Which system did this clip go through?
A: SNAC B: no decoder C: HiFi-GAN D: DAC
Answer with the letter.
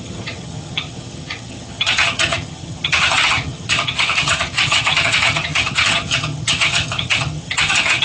C